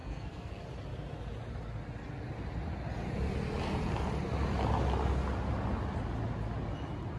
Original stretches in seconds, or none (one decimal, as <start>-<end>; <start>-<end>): 0.6-7.2